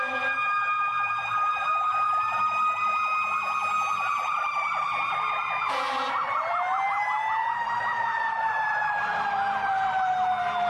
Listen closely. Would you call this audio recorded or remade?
remade